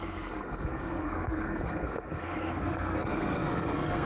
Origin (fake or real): fake